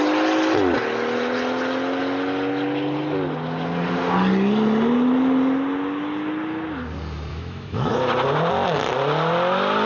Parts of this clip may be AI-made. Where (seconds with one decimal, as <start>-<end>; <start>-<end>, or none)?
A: 7.3-7.9